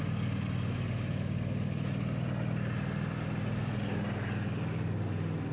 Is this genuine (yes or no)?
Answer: yes